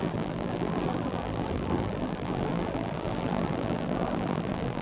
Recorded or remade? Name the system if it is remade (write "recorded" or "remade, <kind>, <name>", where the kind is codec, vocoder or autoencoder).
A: remade, vocoder, BigVGAN v2